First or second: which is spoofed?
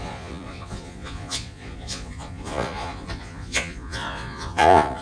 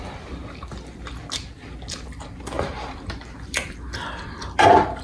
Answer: first